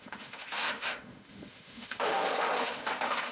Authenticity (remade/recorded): remade